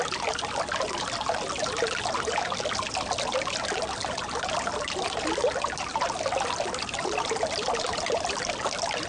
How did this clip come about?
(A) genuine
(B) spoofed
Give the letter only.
A